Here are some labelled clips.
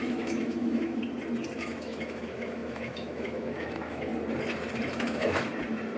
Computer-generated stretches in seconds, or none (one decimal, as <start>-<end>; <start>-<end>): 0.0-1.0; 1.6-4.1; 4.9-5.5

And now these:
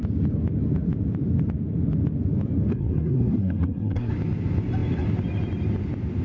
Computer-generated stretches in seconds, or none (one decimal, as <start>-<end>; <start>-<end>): 2.7-4.1

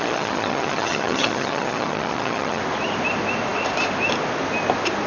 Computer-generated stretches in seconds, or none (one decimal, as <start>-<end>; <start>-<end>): 0.0-2.6

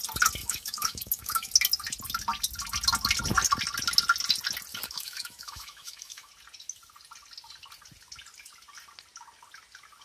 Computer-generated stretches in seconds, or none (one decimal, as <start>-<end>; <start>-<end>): 0.4-1.5; 4.7-6.3